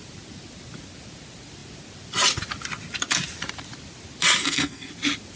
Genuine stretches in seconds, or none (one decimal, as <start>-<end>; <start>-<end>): 0.0-4.4; 4.9-5.4